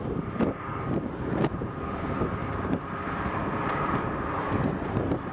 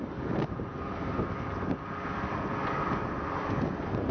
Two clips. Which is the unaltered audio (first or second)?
second